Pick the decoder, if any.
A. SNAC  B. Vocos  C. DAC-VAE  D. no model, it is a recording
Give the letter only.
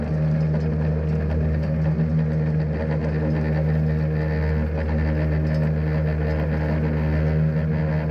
D